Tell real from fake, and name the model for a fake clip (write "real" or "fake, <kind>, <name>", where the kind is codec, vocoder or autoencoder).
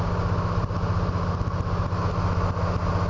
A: real